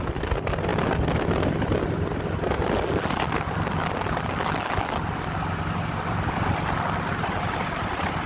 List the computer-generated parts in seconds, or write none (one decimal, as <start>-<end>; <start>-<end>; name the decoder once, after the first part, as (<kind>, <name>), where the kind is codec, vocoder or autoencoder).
none